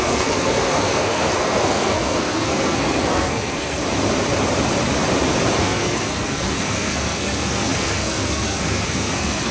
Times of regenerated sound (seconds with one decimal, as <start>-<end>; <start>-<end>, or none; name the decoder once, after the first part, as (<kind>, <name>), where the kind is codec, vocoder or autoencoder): 0.0-3.8 (codec, SNAC); 5.6-9.5